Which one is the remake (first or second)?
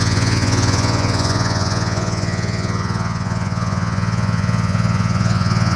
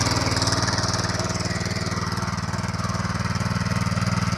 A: first